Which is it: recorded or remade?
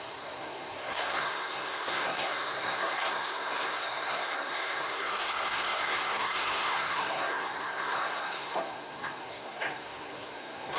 remade